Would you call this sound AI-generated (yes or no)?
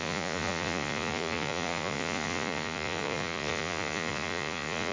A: yes